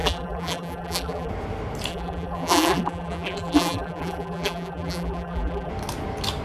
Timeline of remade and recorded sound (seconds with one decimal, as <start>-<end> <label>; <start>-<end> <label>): 0.0-1.3 remade; 1.3-1.9 recorded; 1.9-5.7 remade; 5.7-6.4 recorded